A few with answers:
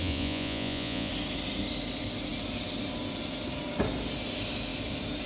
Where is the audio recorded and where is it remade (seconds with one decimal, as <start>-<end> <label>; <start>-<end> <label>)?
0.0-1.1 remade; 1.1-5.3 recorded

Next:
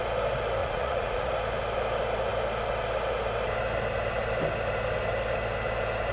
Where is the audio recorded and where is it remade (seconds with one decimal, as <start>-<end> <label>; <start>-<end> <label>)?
0.0-0.6 recorded; 0.6-1.3 remade; 1.3-6.1 recorded

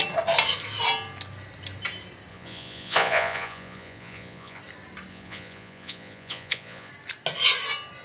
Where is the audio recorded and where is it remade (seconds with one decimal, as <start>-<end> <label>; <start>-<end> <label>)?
0.0-2.3 recorded; 2.3-4.6 remade; 4.6-5.1 recorded; 5.1-6.9 remade; 6.9-8.0 recorded

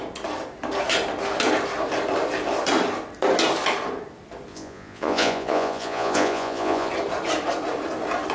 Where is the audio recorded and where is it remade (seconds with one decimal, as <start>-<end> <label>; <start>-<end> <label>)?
0.0-4.5 recorded; 4.5-6.9 remade; 6.9-8.3 recorded

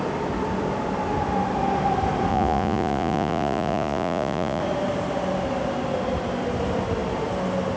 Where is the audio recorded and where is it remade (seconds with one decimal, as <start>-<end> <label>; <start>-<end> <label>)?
0.0-2.3 recorded; 2.3-4.6 remade; 4.6-7.8 recorded

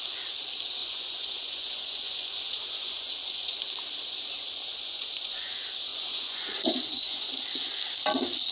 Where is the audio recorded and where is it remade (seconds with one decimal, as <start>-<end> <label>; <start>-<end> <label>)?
0.0-0.8 recorded; 0.8-3.6 remade; 3.6-4.7 recorded; 4.7-5.5 remade; 5.5-5.9 recorded; 5.9-7.3 remade; 7.3-8.5 recorded